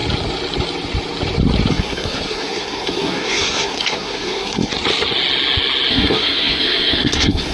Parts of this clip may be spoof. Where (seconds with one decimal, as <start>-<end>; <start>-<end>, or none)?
1.7-4.7; 5.9-7.5